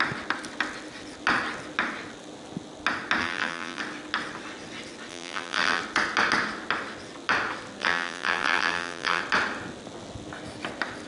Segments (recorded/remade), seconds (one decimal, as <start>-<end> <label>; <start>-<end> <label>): 0.0-3.2 recorded; 3.2-3.8 remade; 3.8-5.1 recorded; 5.1-5.8 remade; 5.8-7.8 recorded; 7.8-9.2 remade; 9.2-11.1 recorded